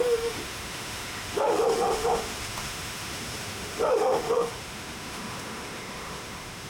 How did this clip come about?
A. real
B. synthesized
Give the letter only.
B